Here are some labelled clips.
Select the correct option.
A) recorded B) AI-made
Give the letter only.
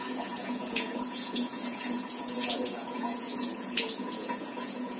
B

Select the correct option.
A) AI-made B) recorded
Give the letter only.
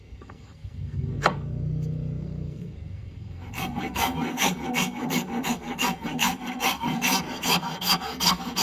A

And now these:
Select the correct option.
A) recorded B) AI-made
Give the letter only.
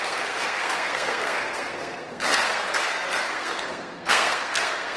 B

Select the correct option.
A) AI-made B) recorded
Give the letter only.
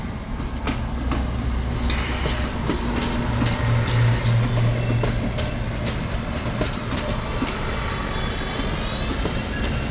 B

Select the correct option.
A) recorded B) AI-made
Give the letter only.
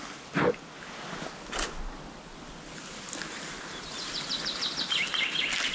A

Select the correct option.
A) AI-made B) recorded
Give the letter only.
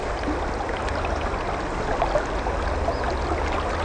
B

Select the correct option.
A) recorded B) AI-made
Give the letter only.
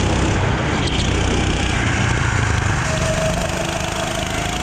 A